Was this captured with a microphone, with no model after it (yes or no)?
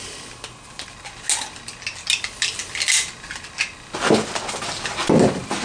yes